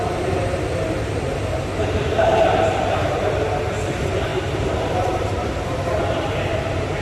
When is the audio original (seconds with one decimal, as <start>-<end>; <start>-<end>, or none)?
none